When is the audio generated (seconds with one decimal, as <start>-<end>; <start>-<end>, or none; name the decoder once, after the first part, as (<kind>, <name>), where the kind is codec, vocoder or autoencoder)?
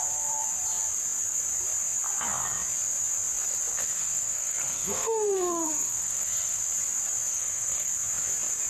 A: 3.7-6.6 (codec, SNAC); 7.3-7.9